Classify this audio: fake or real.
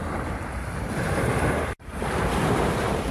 fake